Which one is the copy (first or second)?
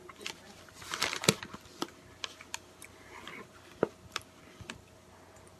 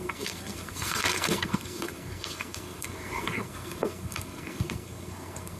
second